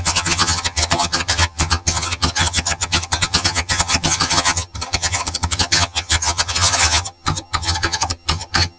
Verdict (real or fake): fake